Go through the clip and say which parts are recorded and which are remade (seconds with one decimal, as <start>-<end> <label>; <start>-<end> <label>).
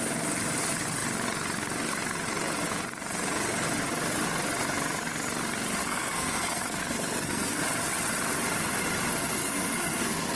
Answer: 0.0-5.8 recorded; 5.8-7.6 remade; 7.6-9.4 recorded; 9.4-10.4 remade